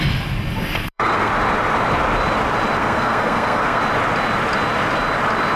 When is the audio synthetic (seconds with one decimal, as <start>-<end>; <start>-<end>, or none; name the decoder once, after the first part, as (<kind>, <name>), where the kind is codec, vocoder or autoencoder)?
0.8-1.3 (codec, SNAC); 2.8-3.8